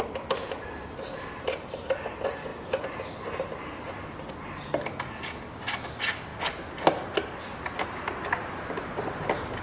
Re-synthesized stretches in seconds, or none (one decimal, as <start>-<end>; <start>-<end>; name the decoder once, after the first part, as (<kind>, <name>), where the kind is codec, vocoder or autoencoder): none